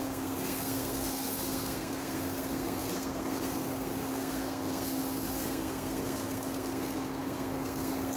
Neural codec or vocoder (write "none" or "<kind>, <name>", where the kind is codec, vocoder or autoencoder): codec, SNAC